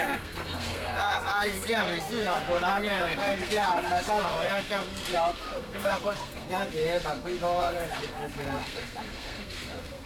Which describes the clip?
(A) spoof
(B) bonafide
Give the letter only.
A